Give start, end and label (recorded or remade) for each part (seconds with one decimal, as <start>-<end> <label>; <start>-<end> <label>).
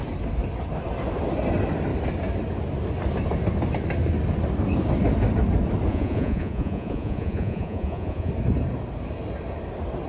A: 0.0-5.9 recorded; 5.9-8.3 remade; 8.3-10.1 recorded